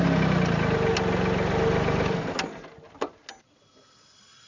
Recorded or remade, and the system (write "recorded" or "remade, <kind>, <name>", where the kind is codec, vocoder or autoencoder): recorded